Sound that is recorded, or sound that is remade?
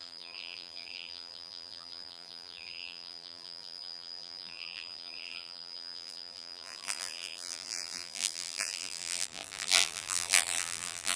remade